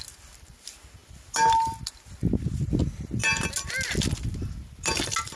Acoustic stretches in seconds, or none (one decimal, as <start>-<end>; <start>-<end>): 0.0-5.4